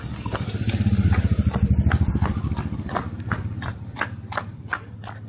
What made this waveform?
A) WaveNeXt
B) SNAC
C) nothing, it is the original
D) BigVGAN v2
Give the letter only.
D